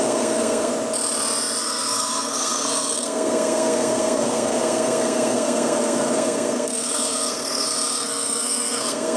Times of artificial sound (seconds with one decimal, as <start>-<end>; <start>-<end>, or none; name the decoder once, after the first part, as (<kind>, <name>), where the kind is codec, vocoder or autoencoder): 0.0-0.7 (codec, SNAC); 1.6-9.2